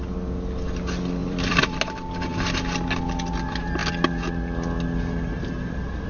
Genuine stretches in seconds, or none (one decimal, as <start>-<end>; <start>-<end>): 0.0-1.2; 1.8-6.1